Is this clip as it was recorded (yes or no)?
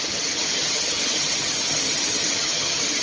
no